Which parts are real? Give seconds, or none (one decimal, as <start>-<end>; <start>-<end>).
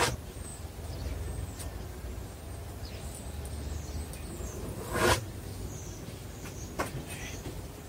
0.0-7.9